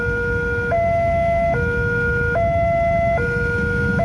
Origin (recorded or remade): recorded